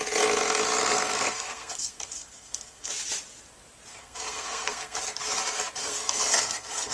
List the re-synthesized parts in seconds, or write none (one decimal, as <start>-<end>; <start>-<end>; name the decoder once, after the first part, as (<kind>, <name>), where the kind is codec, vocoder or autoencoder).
0.8-2.9 (codec, SNAC); 3.9-5.0; 5.8-6.9